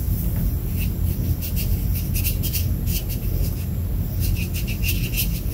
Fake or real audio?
real